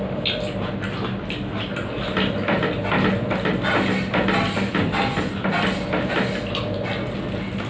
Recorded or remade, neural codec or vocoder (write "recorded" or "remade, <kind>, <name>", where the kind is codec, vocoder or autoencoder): recorded